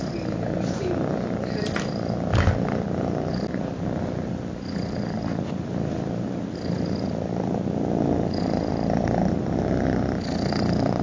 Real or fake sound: real